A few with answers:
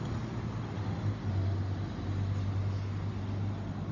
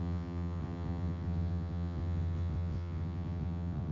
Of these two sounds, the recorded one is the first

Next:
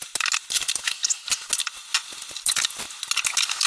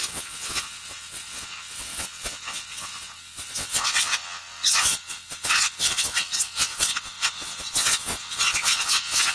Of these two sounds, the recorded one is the first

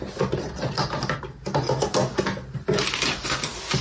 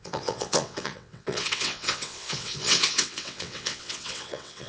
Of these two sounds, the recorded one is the first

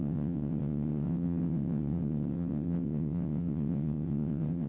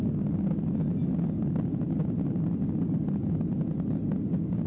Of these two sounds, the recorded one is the second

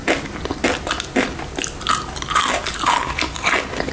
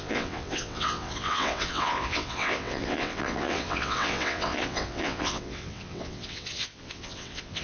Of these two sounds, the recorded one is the first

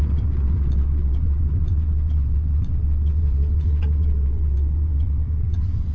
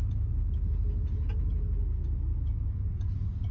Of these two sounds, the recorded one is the second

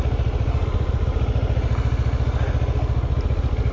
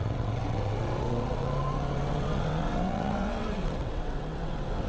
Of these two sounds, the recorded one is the first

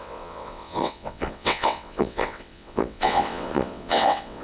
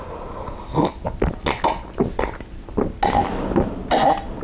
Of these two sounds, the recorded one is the second